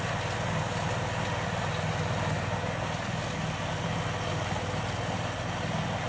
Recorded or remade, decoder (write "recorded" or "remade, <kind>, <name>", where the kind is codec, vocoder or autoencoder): recorded